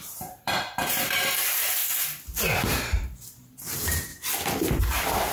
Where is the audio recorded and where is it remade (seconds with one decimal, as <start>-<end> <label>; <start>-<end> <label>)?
0.0-1.8 remade; 1.8-2.6 recorded; 2.6-4.1 remade; 4.1-4.8 recorded; 4.8-5.3 remade